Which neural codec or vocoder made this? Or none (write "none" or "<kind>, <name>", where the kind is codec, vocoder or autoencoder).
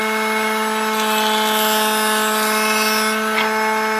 none